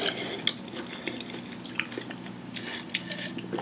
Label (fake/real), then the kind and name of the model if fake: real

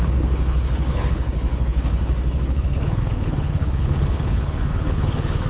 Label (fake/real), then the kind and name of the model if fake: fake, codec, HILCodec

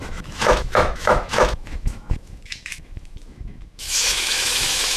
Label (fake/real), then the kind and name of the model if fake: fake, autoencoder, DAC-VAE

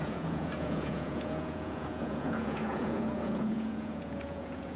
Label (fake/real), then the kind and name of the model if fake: fake, vocoder, Vocos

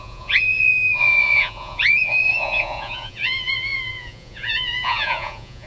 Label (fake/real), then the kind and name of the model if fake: fake, vocoder, Vocos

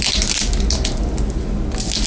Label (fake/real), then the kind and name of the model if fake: real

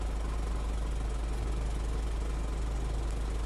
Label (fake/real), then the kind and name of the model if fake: real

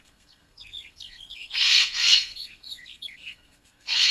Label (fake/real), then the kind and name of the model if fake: fake, codec, SNAC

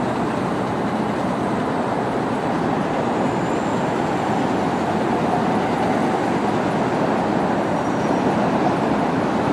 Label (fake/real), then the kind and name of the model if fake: real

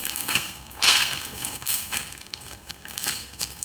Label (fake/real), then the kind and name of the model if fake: fake, codec, SNAC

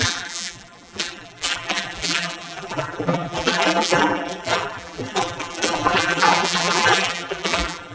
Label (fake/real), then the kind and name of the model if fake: fake, vocoder, BigVGAN v2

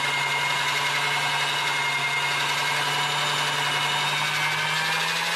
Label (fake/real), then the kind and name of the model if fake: real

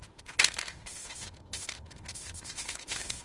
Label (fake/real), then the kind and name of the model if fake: fake, autoencoder, DAC-VAE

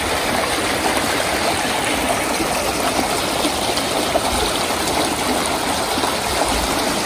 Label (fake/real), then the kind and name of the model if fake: real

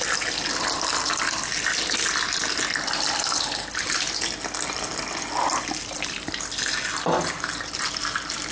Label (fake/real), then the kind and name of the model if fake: real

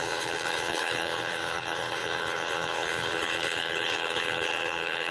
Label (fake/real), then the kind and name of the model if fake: fake, codec, HILCodec